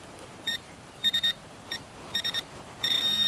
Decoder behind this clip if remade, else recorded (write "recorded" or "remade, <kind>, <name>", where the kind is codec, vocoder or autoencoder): remade, vocoder, BigVGAN v2